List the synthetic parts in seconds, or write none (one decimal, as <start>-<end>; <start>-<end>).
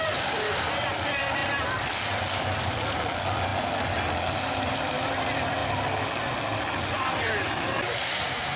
0.0-3.5; 4.7-8.6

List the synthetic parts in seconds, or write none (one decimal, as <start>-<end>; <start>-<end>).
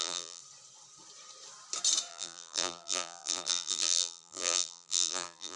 0.0-0.4; 2.1-5.6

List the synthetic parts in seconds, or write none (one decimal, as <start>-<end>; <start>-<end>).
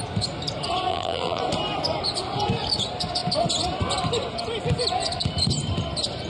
0.9-1.4